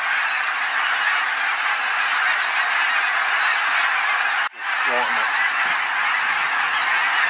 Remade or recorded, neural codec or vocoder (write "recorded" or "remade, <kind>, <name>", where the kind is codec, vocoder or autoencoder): recorded